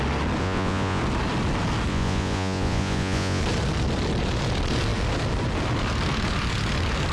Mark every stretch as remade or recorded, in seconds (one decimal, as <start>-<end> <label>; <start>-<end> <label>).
0.0-0.4 recorded; 0.4-1.0 remade; 1.0-1.9 recorded; 1.9-3.4 remade; 3.4-7.1 recorded